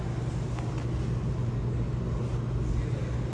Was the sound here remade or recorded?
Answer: recorded